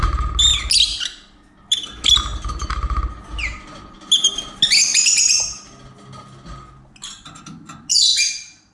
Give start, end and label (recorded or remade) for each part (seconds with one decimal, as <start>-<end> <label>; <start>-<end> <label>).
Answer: 0.0-8.7 recorded